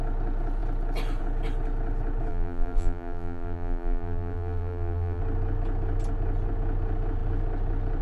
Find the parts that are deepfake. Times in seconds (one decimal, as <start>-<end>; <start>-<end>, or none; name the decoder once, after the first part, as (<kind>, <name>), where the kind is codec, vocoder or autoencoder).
2.3-5.2 (vocoder, BigVGAN v2)